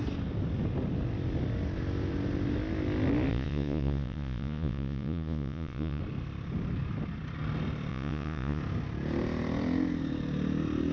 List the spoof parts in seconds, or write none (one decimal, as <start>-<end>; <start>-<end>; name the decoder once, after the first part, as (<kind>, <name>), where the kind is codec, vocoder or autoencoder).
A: 3.3-6.0 (vocoder, Vocos); 7.9-8.6